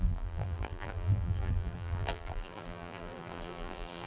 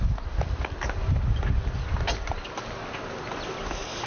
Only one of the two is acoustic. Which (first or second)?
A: second